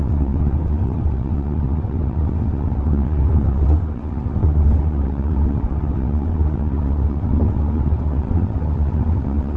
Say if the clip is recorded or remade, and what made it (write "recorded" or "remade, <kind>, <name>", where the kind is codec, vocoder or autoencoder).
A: remade, vocoder, WaveNeXt